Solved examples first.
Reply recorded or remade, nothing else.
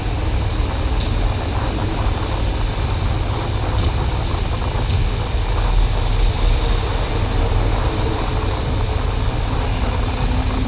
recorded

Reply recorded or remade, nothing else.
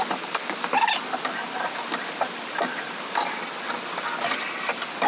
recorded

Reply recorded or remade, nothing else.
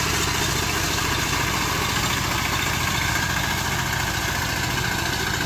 recorded